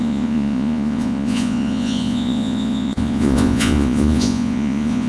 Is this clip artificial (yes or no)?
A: yes